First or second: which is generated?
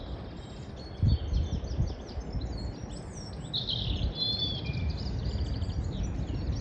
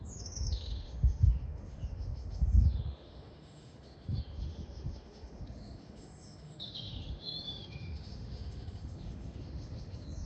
second